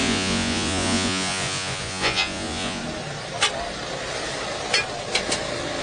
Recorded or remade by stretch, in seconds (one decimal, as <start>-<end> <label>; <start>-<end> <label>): 0.0-2.8 remade; 2.8-5.8 recorded